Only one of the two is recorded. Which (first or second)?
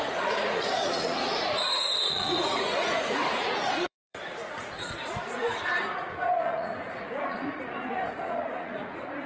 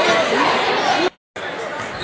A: second